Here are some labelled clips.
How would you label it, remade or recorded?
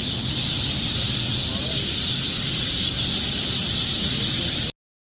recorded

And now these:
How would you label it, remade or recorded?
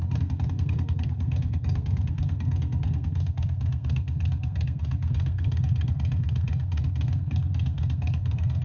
remade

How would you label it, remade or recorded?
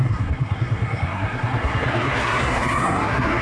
remade